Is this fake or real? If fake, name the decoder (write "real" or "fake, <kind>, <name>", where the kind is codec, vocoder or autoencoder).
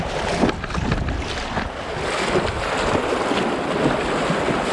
real